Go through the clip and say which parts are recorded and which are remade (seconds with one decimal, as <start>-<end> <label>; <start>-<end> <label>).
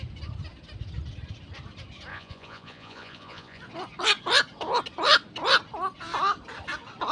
0.0-2.1 recorded; 2.1-3.6 remade; 3.6-7.1 recorded